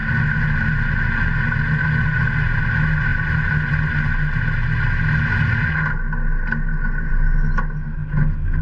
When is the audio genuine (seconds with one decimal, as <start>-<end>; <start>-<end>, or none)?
0.0-8.6

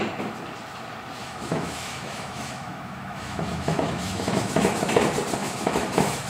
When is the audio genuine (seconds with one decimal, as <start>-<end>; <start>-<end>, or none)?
0.0-1.2; 5.0-5.4